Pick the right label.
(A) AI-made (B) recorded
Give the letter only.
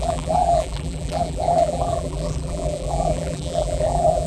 A